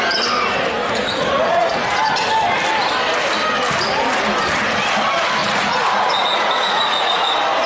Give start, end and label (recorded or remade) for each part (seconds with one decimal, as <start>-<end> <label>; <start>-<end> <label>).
0.0-0.8 recorded; 0.8-2.1 remade; 2.1-5.4 recorded; 5.4-7.3 remade; 7.3-7.7 recorded